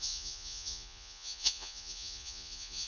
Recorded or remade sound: remade